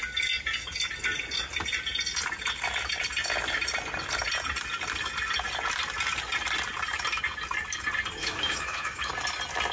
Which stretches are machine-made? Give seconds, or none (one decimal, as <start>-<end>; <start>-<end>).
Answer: 8.2-9.1

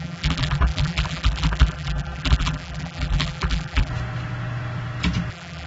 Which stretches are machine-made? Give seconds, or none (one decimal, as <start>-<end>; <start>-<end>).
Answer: 0.0-3.9; 5.3-5.7

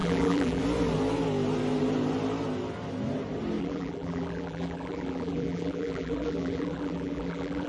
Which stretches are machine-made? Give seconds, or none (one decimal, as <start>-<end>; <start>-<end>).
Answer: 0.0-0.6; 3.6-7.7

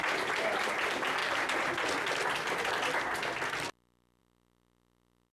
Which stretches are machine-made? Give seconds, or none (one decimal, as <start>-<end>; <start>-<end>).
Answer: none